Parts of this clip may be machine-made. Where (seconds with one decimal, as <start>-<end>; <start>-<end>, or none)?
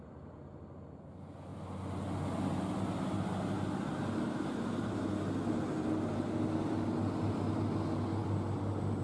none